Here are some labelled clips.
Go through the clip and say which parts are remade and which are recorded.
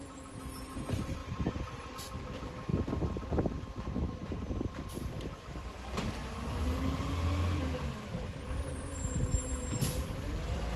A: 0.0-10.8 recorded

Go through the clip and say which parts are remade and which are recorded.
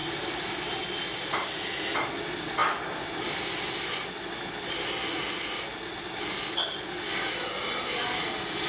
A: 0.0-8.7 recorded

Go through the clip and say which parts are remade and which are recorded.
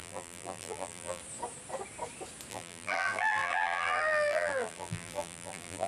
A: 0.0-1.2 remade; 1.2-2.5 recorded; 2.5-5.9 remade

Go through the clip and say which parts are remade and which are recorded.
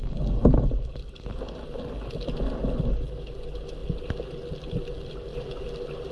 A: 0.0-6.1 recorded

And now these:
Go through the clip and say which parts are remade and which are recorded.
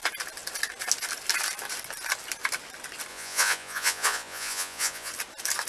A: 0.0-3.1 recorded; 3.1-5.1 remade; 5.1-5.7 recorded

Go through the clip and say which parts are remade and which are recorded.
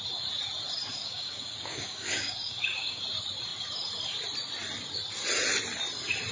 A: 0.0-1.0 recorded; 1.0-3.0 remade; 3.0-6.3 recorded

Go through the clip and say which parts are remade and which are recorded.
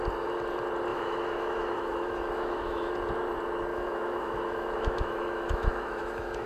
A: 0.0-0.9 recorded; 0.9-2.9 remade; 2.9-3.7 recorded; 3.7-6.5 remade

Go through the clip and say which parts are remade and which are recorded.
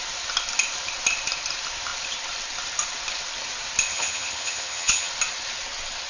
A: 0.0-3.9 recorded; 3.9-5.1 remade; 5.1-6.1 recorded